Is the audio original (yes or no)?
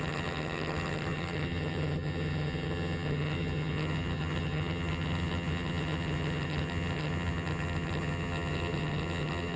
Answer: no